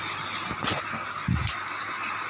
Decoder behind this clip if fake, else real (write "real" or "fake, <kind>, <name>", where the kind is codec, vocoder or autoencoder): real